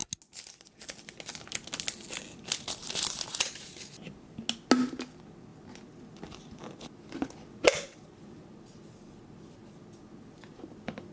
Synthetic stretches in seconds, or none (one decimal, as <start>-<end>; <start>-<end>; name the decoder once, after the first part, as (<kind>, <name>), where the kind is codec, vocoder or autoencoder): none